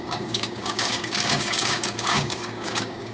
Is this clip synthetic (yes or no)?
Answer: yes